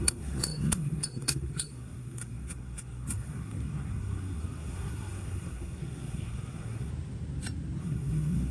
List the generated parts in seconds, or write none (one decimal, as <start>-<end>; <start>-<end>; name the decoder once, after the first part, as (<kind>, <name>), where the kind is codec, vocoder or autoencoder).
0.0-6.9 (codec, SNAC); 7.8-8.5